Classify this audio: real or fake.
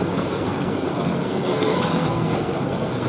fake